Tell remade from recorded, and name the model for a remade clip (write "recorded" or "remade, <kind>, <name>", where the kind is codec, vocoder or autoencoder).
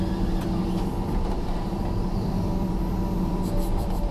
remade, vocoder, BigVGAN v2